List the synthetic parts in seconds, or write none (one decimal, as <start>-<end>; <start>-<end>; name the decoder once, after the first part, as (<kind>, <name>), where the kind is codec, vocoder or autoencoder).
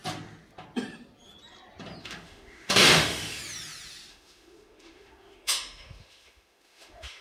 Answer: 2.0-3.4 (autoencoder, DAC-VAE); 4.1-7.2